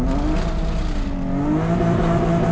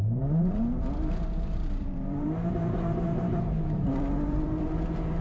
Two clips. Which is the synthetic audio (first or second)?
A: second